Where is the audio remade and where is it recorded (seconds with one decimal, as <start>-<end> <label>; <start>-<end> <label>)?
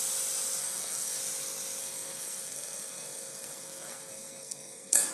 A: 0.0-0.6 recorded; 0.6-1.2 remade; 1.2-1.8 recorded; 1.8-5.1 remade